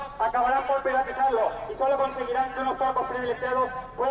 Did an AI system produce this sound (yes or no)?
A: no